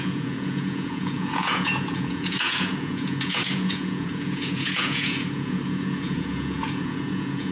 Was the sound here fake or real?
fake